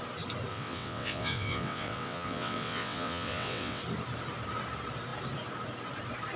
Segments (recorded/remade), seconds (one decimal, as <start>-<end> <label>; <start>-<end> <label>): 0.0-0.5 recorded; 0.5-3.8 remade; 3.8-6.4 recorded